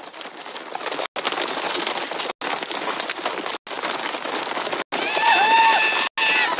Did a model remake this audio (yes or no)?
no